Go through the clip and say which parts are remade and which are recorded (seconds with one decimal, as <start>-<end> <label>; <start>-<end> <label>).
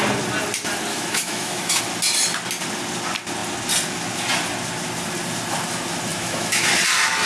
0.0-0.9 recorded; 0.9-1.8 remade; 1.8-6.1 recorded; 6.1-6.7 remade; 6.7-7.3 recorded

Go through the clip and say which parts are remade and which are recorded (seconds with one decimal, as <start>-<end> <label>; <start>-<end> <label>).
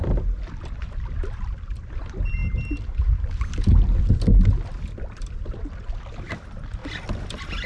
0.0-7.7 recorded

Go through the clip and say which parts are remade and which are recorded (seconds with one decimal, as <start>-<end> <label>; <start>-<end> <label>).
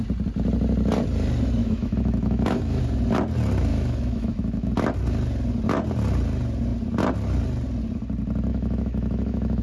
0.0-1.6 recorded; 1.6-2.8 remade; 2.8-3.7 recorded; 3.7-4.7 remade; 4.7-8.5 recorded; 8.5-9.6 remade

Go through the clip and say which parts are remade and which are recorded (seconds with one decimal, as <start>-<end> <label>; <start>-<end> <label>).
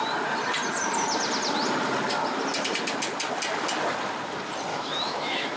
0.0-4.7 recorded; 4.7-5.6 remade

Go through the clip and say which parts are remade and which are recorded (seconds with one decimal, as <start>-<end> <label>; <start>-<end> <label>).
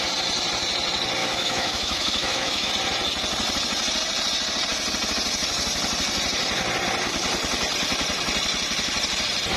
0.0-1.2 recorded; 1.2-2.7 remade; 2.7-9.6 recorded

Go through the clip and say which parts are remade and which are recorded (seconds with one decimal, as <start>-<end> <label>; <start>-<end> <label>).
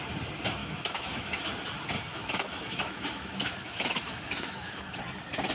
0.0-0.6 recorded; 0.6-1.4 remade; 1.4-2.1 recorded; 2.1-5.0 remade; 5.0-5.5 recorded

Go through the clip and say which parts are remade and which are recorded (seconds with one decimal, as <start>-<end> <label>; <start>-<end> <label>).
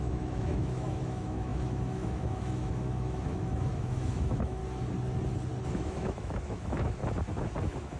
0.0-4.6 remade; 4.6-5.6 recorded; 5.6-7.0 remade; 7.0-7.6 recorded; 7.6-8.0 remade